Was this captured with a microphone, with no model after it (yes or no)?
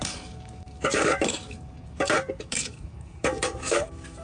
no